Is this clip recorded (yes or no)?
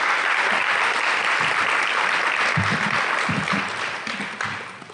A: yes